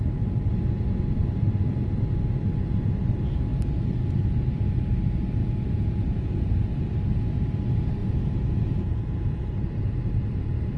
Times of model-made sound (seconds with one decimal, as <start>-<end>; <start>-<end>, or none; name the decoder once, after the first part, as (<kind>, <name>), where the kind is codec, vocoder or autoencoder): 5.4-7.0 (vocoder, Vocos); 8.0-9.5

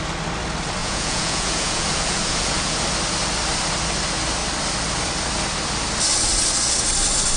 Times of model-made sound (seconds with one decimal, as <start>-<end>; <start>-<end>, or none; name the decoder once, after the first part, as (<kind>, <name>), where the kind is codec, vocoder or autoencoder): 0.8-2.8 (vocoder, Vocos)

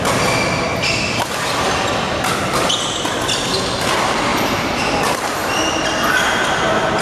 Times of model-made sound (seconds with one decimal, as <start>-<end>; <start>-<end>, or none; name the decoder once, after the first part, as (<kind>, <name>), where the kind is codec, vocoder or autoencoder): 4.3-5.5 (vocoder, BigVGAN v2)

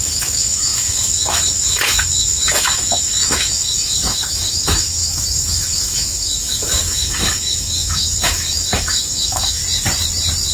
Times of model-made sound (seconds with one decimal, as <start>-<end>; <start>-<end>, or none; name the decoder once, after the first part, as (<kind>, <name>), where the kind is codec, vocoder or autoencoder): 0.0-9.6 (autoencoder, DAC-VAE)